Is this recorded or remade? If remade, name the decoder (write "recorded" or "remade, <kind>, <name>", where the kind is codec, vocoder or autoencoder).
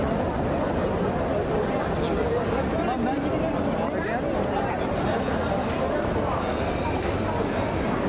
recorded